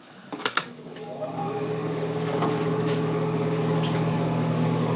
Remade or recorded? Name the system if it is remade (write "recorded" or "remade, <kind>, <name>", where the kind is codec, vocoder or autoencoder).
remade, codec, DAC